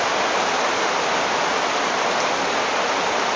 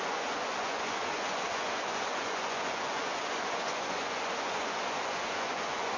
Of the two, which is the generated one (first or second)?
second